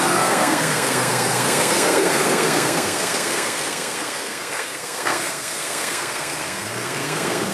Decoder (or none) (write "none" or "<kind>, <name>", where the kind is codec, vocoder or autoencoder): codec, SNAC